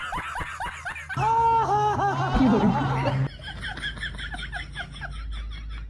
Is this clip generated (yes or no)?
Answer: no